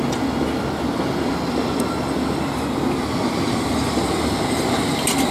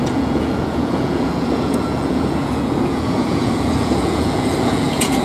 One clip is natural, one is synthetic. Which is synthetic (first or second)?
second